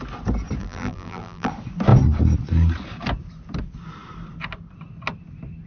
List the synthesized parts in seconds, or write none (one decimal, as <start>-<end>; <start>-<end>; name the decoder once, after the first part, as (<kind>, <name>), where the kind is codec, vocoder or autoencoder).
0.6-1.5 (vocoder, BigVGAN v2)